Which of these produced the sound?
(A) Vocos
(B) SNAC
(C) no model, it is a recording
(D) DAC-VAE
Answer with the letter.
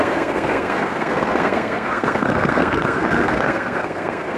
B